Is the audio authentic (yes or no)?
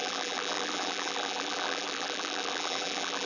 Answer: no